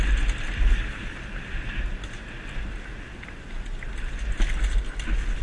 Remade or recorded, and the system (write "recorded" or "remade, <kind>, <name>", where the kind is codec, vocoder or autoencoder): recorded